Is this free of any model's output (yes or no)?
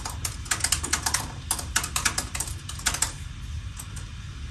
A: yes